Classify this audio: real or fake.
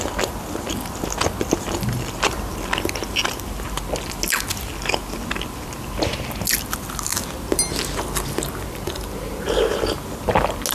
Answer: real